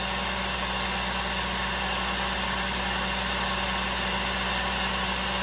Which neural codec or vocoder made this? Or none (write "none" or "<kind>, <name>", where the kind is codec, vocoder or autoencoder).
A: none